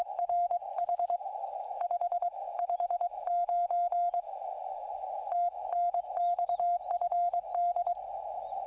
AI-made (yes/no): no